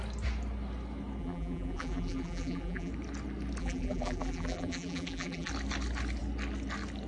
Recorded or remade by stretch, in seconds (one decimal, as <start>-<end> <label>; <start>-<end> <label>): 0.0-1.2 recorded; 1.2-2.9 remade; 2.9-3.6 recorded; 3.6-5.5 remade; 5.5-7.1 recorded